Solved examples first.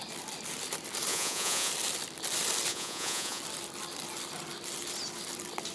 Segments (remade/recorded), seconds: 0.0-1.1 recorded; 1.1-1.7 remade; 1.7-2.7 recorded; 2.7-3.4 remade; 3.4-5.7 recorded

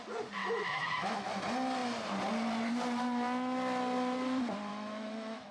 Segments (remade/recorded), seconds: 0.0-0.4 recorded; 0.4-1.3 remade; 1.3-4.7 recorded; 4.7-5.5 remade

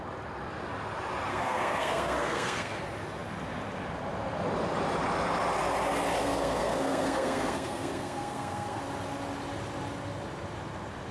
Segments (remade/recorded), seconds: 0.0-1.3 recorded; 1.3-2.8 remade; 2.8-6.2 recorded; 6.2-8.8 remade; 8.8-11.1 recorded

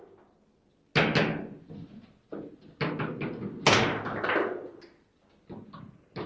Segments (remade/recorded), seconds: 0.0-6.3 recorded

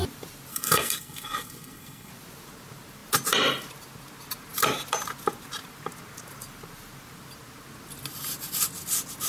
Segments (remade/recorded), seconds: 0.0-0.5 recorded; 0.5-2.1 remade; 2.1-9.3 recorded

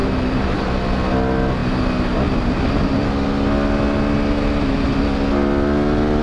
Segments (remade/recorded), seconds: 0.0-0.6 remade; 0.6-6.2 recorded